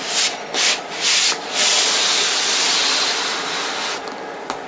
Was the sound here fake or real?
real